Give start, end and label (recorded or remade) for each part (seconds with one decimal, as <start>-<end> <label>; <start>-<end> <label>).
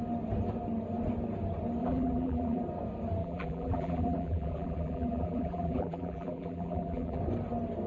0.0-1.8 recorded; 1.8-2.6 remade; 2.6-3.2 recorded; 3.2-7.2 remade; 7.2-7.9 recorded